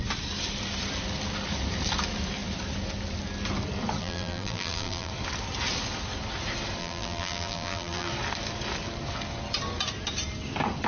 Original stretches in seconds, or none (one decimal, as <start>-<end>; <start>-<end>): 0.0-4.0; 5.1-6.8; 8.1-10.9